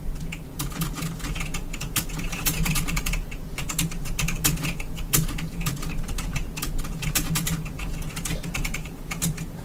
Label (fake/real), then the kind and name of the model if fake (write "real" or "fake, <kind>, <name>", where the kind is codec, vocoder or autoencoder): fake, vocoder, Vocos